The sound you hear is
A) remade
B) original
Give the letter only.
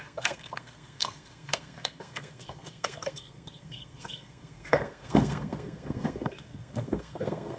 A